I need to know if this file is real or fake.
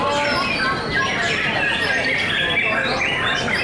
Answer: real